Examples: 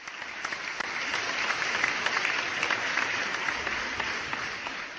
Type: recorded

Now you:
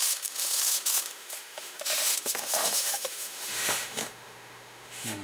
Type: remade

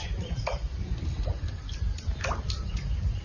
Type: remade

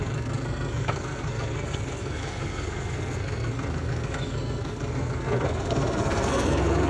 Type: remade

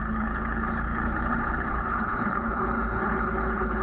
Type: remade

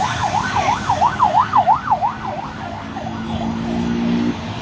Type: remade